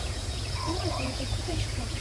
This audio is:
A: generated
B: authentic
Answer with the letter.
A